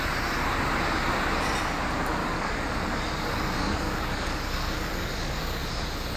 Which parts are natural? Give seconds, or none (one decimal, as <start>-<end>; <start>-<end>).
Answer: 0.0-2.2; 5.6-6.2